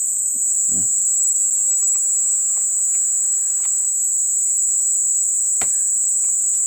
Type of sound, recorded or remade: recorded